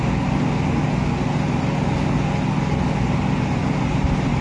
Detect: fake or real real